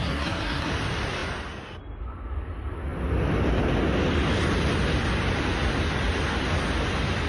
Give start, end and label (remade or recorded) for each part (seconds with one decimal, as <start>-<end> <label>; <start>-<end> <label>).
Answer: 0.0-0.7 remade; 0.7-7.3 recorded